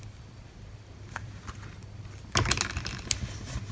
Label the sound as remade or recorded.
recorded